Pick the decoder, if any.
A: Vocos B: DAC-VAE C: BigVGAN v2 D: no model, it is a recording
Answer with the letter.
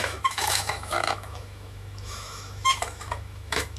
B